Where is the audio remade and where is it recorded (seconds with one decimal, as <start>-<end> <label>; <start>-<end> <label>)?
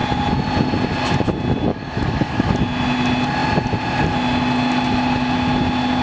0.0-1.7 recorded; 1.7-2.5 remade; 2.5-6.0 recorded